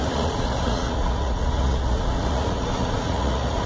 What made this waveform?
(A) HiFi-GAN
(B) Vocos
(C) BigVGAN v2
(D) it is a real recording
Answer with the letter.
B